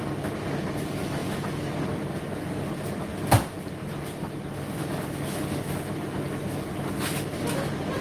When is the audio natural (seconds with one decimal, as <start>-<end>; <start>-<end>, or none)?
0.0-8.0